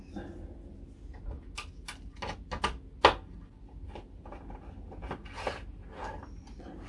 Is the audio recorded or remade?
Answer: recorded